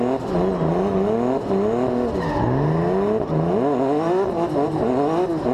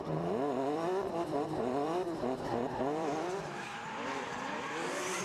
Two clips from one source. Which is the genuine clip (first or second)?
first